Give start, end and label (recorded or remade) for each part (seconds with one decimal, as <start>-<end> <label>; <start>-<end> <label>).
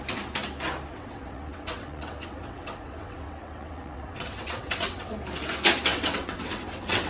0.0-0.9 recorded; 0.9-5.1 remade; 5.1-5.9 recorded; 5.9-7.1 remade